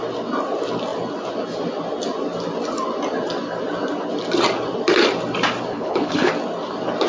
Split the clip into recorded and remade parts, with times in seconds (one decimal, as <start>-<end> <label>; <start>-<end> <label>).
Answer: 0.0-5.7 recorded; 5.7-6.3 remade; 6.3-7.1 recorded